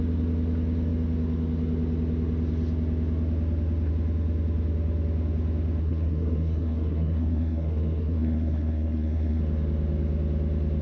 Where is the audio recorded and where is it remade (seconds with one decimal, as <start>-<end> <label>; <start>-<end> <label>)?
0.0-5.8 recorded; 5.8-9.4 remade; 9.4-10.8 recorded